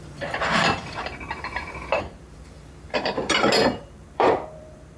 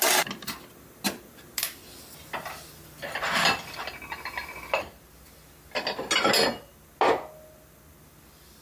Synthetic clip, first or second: first